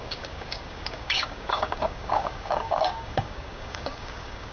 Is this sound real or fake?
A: fake